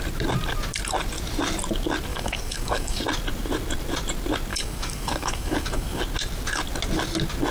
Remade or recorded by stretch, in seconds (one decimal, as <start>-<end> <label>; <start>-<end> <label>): 0.0-2.1 recorded; 2.1-3.0 remade; 3.0-4.5 recorded; 4.5-6.0 remade; 6.0-7.5 recorded